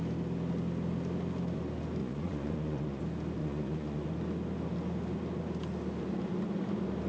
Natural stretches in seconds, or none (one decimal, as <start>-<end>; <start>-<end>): 0.0-2.0; 3.0-3.4; 4.1-7.1